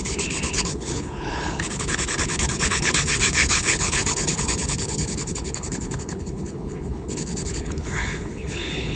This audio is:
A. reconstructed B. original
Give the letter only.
A